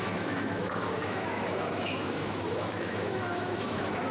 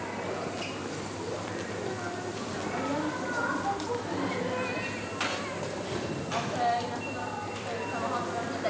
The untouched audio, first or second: second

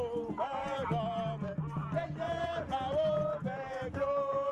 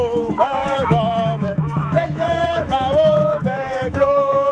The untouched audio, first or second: first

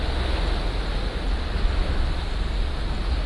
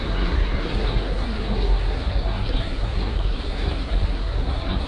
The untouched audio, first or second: first